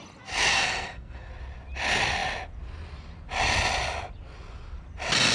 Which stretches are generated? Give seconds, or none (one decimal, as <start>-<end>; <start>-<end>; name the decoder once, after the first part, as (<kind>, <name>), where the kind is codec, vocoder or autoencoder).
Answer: 0.5-1.3 (codec, SNAC)